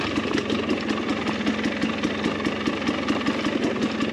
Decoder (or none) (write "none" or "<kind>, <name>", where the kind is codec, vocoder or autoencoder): none